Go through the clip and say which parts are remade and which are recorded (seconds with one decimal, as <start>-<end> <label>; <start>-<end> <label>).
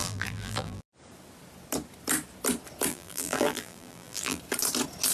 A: 0.0-0.9 remade; 0.9-2.9 recorded; 2.9-4.4 remade; 4.4-5.1 recorded